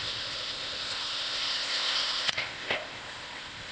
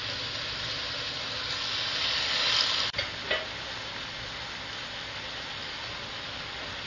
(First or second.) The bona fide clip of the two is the second